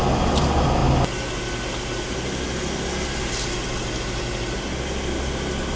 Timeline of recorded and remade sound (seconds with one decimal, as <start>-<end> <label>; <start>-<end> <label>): 0.0-5.8 recorded